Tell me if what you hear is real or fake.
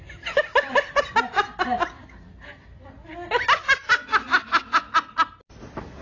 real